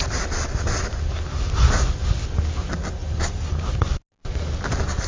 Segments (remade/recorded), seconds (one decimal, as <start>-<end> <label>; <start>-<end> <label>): 0.0-3.0 recorded; 3.0-3.7 remade; 3.7-5.1 recorded